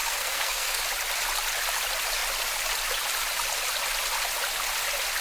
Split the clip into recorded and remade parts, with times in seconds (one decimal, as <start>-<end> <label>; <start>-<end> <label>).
0.0-0.8 remade; 0.8-5.2 recorded